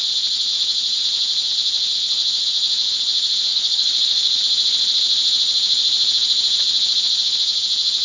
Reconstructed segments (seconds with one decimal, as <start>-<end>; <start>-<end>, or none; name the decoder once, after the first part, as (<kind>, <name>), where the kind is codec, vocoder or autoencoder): 3.5-4.4 (codec, HILCodec)

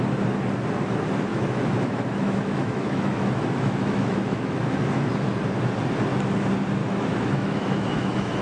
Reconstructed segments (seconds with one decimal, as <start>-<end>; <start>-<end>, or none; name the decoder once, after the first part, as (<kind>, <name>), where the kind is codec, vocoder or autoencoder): 1.3-5.1 (autoencoder, DAC-VAE); 6.8-8.4